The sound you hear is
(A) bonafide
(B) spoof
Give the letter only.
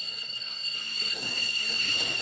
B